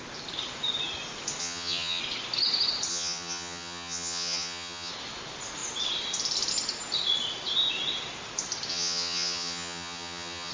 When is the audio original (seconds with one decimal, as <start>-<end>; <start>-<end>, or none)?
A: 0.0-1.4; 2.0-2.9; 4.9-8.7

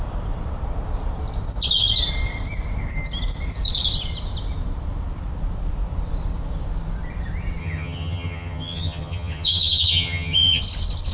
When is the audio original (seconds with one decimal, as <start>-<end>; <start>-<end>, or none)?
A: 0.0-7.6; 10.6-11.1

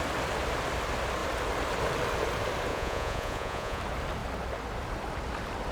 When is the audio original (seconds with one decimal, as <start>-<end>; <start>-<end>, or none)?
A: 0.0-2.7; 3.8-5.7

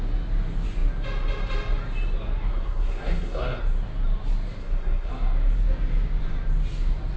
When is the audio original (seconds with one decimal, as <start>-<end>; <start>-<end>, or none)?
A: 0.0-2.5; 3.6-4.6; 5.1-7.2

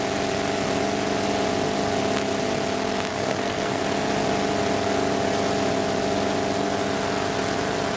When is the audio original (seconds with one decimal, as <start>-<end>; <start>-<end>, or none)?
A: 0.0-3.1; 3.8-8.0

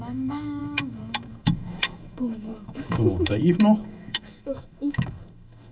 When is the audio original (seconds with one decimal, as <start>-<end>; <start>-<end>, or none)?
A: none

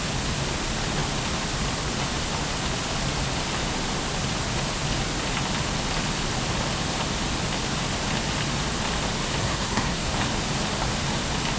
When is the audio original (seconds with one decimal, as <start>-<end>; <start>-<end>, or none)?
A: 0.0-9.4; 10.1-11.6